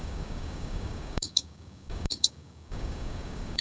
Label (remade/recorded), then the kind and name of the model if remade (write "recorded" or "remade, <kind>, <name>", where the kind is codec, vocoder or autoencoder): remade, codec, DAC